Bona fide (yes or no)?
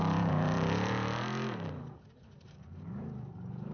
no